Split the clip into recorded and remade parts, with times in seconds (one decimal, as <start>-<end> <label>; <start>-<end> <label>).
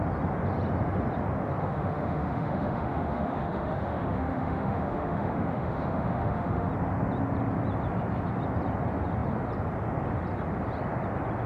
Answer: 0.0-1.6 recorded; 1.6-6.7 remade; 6.7-11.5 recorded